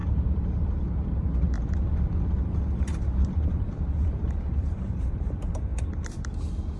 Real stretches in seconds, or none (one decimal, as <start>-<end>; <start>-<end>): 0.0-2.8; 5.7-6.8